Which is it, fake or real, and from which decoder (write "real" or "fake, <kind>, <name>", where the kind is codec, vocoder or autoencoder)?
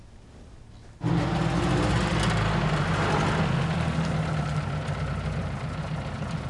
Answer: real